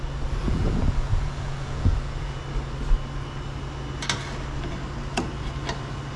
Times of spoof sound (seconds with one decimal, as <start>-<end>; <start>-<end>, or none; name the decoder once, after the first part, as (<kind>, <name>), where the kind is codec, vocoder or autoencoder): 0.4-2.4 (vocoder, Vocos)